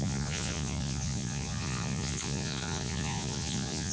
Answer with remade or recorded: remade